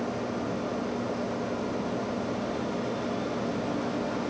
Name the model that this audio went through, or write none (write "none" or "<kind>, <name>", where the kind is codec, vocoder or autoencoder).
none